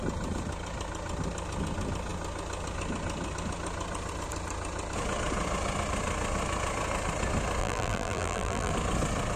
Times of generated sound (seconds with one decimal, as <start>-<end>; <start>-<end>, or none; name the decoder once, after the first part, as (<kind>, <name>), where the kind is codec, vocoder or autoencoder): 7.6-8.7 (vocoder, BigVGAN v2)